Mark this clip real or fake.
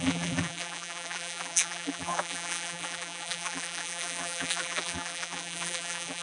fake